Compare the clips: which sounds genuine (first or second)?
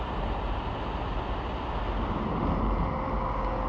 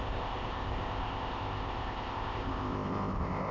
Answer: first